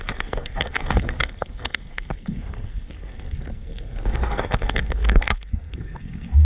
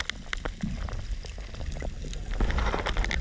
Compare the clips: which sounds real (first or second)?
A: second